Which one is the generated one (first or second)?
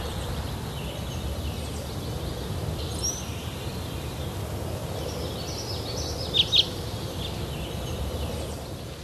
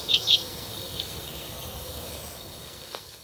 second